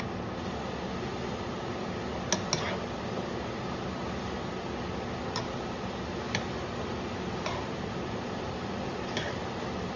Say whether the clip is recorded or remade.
recorded